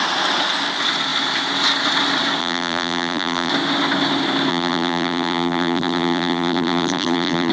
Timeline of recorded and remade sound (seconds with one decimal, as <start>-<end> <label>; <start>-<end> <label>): 0.0-2.4 recorded; 2.4-3.5 remade; 3.5-4.5 recorded; 4.5-7.5 remade